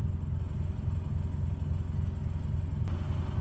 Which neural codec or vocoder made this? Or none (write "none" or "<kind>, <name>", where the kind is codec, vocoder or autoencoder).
none